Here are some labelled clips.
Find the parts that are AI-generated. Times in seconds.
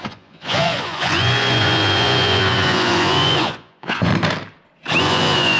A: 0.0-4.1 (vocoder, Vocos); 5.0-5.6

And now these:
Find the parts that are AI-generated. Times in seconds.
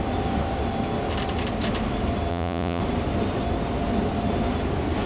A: 2.3-2.8 (vocoder, Vocos)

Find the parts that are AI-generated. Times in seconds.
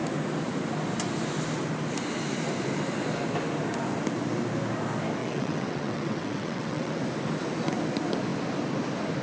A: 5.2-7.0 (vocoder, WaveNeXt)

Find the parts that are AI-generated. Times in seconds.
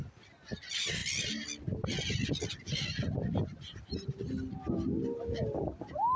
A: none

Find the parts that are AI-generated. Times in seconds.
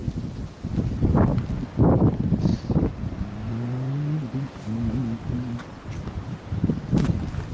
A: 2.5-3.5 (vocoder, BigVGAN v2)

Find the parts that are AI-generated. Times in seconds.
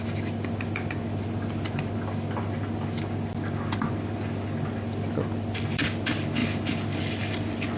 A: none